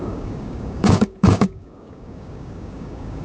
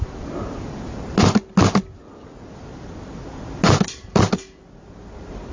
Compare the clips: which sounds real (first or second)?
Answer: second